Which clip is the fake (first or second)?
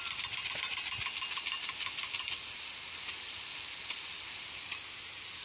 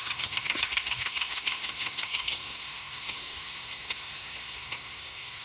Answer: second